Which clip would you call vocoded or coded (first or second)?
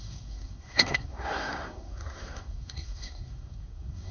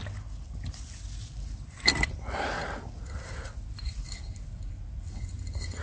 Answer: first